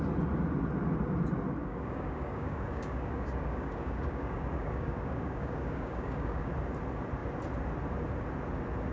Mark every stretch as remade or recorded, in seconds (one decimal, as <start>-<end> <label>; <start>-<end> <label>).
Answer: 0.0-1.6 recorded; 1.6-6.5 remade; 6.5-8.9 recorded